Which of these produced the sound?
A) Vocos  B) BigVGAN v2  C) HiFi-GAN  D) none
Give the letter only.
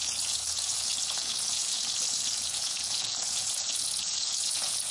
A